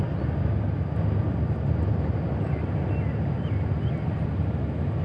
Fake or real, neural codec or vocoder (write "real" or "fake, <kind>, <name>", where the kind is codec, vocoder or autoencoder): real